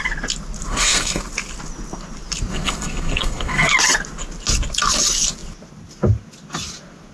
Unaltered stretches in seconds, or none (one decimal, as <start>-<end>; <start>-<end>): 0.0-0.7; 1.2-2.5; 3.7-7.1